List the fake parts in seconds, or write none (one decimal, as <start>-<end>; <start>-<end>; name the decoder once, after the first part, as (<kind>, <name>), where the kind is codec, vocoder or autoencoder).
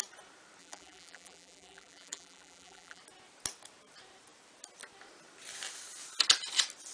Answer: 0.6-3.0 (vocoder, BigVGAN v2)